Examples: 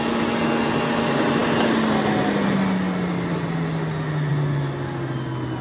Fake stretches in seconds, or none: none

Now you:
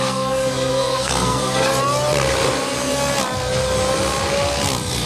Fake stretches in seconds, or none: 0.0-1.7 (codec, SNAC)